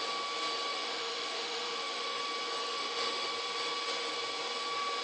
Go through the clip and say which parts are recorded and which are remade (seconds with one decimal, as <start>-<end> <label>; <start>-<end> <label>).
0.0-0.7 recorded; 0.7-2.2 remade; 2.2-2.6 recorded; 2.6-3.3 remade; 3.3-5.0 recorded